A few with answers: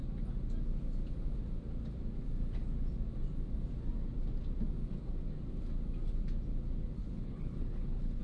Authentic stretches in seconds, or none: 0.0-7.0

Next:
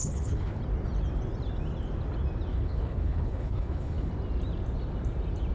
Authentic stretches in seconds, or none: 0.6-2.5; 4.1-5.5

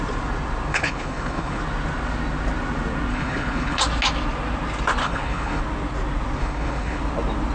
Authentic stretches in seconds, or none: 0.0-0.7; 1.6-3.1; 3.8-5.0; 5.6-6.4; 7.0-7.5